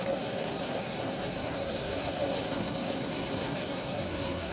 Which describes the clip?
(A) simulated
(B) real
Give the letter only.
A